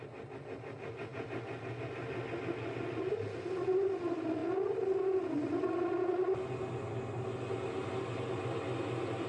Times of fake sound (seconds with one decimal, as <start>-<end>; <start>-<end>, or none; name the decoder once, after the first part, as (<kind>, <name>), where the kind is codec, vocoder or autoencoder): none